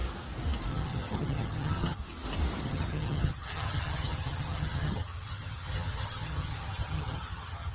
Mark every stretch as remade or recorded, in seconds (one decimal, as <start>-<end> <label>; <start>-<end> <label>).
0.0-0.7 recorded; 0.7-2.0 remade; 2.0-2.6 recorded; 2.6-7.7 remade